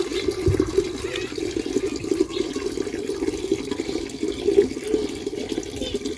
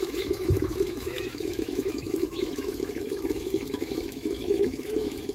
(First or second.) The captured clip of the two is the first